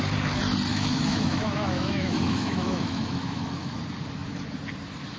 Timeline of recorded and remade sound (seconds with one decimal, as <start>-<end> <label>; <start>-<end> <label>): 0.0-0.7 recorded; 0.7-3.8 remade; 3.8-5.2 recorded